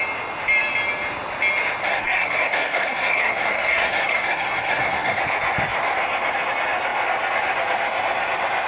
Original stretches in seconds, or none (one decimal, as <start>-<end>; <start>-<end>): 0.0-1.8; 5.2-8.7